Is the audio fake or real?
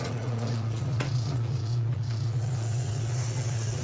fake